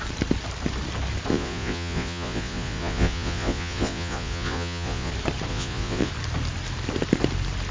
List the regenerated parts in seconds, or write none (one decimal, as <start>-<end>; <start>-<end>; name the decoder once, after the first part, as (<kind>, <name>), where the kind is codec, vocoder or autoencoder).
1.3-5.1 (vocoder, Vocos); 5.5-6.1